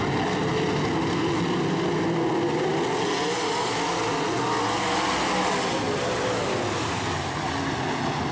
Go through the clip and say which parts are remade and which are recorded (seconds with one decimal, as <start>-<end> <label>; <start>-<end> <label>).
0.0-8.3 recorded